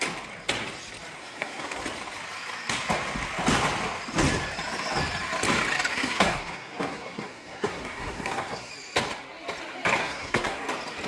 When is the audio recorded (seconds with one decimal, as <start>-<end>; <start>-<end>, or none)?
0.0-1.2; 1.8-5.9; 8.7-10.0; 10.6-11.1